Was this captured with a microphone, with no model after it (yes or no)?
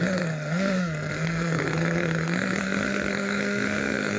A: no